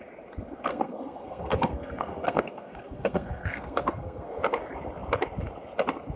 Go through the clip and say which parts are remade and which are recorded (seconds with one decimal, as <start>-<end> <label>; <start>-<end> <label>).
0.0-0.7 recorded; 0.7-4.4 remade; 4.4-6.2 recorded